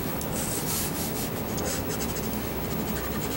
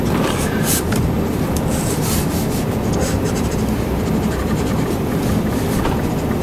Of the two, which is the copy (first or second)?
second